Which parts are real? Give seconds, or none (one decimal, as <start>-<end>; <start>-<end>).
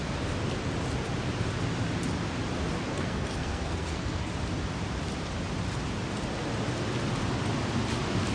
0.0-2.9; 4.3-8.3